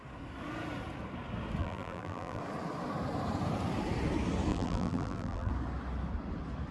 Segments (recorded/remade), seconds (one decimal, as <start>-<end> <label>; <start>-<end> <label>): 0.0-1.6 recorded; 1.6-2.4 remade; 2.4-4.5 recorded; 4.5-5.5 remade; 5.5-6.7 recorded